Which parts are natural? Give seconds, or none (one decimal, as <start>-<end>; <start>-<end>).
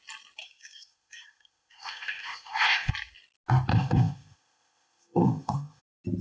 0.0-0.4; 2.9-3.7; 5.8-6.2